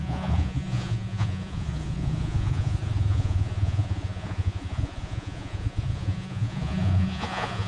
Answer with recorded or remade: remade